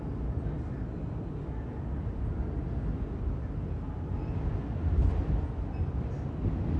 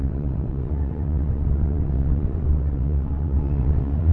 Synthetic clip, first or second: second